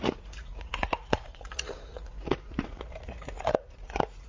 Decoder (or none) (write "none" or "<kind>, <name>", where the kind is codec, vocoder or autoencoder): vocoder, Vocos